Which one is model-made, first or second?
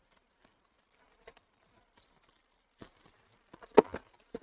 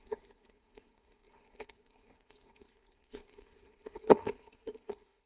second